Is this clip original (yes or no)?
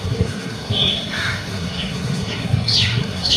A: no